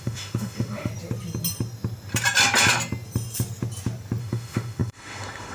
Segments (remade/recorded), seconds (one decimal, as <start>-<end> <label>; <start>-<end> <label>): 0.0-0.9 remade; 0.9-4.2 recorded; 4.2-5.5 remade